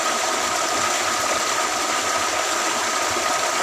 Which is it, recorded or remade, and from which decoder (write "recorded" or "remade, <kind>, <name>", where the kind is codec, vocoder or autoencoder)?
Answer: recorded